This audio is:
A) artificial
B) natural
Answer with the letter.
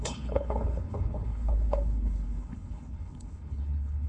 A